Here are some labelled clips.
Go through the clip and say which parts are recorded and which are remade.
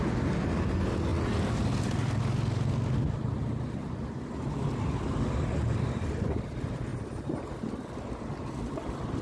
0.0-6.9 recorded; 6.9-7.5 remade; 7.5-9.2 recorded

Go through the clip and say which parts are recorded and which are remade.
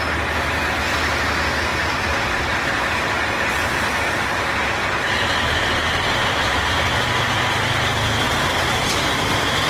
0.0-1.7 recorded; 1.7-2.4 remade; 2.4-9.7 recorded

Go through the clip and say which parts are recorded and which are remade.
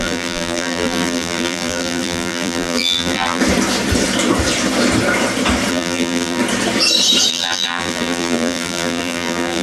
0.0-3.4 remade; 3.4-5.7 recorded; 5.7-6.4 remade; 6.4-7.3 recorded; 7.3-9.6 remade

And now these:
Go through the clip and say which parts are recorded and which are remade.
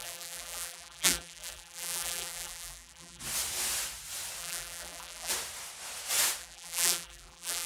0.0-3.2 remade; 3.2-4.4 recorded; 4.4-5.3 remade; 5.3-6.4 recorded; 6.4-7.7 remade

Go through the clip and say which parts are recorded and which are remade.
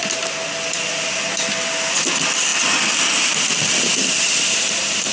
0.0-5.1 recorded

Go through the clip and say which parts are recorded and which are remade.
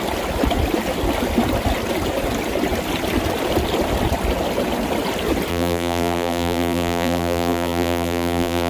0.0-5.5 recorded; 5.5-8.7 remade